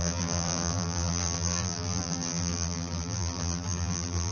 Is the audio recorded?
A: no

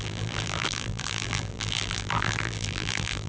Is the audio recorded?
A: no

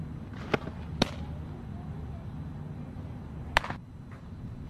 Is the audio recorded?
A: yes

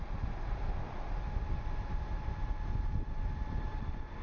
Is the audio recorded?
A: yes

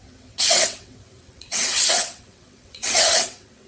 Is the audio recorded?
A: no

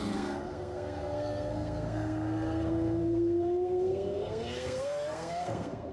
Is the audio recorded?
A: no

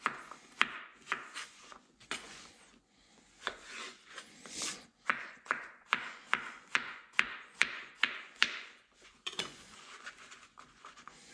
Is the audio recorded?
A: no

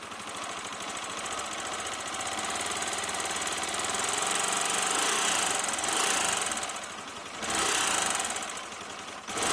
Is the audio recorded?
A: yes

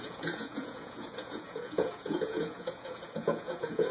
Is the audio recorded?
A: no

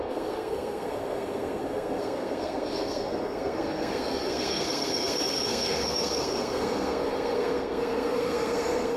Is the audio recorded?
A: no